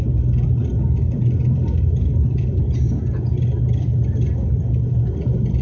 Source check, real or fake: real